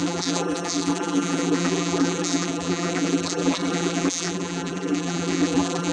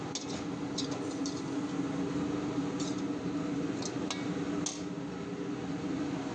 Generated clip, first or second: first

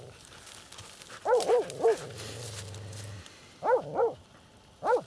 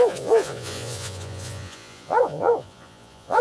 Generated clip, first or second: second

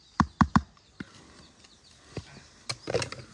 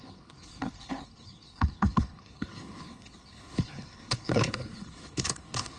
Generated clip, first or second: second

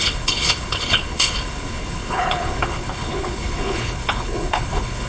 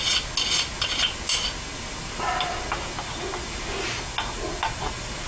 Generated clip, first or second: first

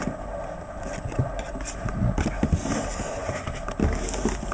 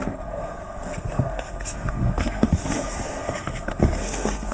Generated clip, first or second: second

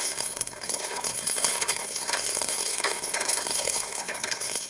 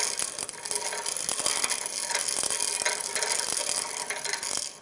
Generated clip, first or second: first